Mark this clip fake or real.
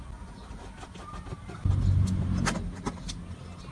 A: real